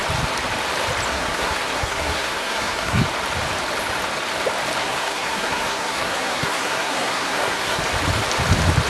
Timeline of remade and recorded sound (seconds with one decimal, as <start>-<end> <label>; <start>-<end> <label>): 0.0-1.1 recorded; 1.1-3.0 remade; 3.0-4.8 recorded; 4.8-7.8 remade; 7.8-8.9 recorded